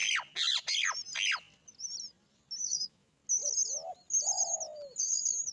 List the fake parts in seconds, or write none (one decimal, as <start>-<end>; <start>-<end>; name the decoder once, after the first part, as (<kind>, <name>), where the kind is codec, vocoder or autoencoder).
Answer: 2.6-3.2 (autoencoder, DAC-VAE); 5.0-5.5